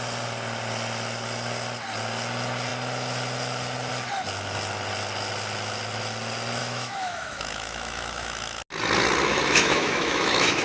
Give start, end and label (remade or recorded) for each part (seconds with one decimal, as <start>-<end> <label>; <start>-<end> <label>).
0.0-6.6 recorded; 6.6-8.6 remade; 8.6-9.3 recorded; 9.3-10.6 remade